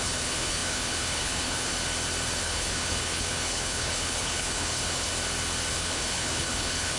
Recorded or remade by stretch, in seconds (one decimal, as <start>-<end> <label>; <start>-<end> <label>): 0.0-1.7 remade; 1.7-2.4 recorded; 2.4-5.1 remade; 5.1-5.7 recorded; 5.7-7.0 remade